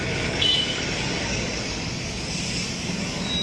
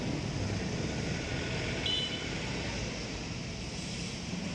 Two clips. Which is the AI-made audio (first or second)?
first